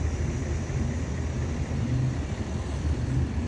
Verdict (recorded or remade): recorded